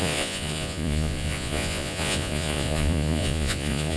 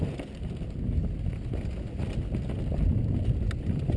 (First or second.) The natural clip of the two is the second